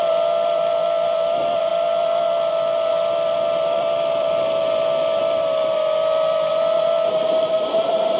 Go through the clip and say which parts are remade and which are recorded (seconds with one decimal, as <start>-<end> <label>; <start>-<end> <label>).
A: 0.0-1.7 remade; 1.7-2.5 recorded; 2.5-4.6 remade; 4.6-5.2 recorded; 5.2-6.5 remade; 6.5-7.3 recorded; 7.3-8.2 remade